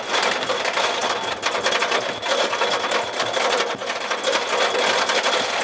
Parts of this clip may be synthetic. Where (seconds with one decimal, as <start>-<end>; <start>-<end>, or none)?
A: none